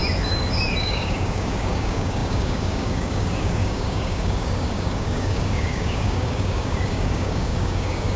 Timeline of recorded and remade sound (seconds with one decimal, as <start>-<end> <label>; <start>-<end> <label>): 0.0-0.8 recorded; 0.8-8.2 remade